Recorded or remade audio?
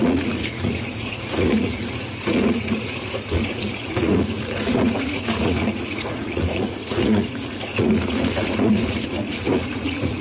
remade